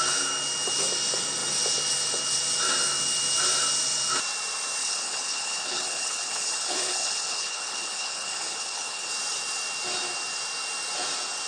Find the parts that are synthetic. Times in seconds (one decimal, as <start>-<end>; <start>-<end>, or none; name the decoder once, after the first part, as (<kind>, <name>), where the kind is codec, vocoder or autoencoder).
4.8-9.1 (codec, HILCodec)